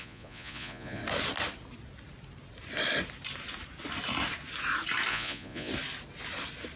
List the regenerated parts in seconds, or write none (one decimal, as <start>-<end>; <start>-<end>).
0.0-1.0; 5.1-5.7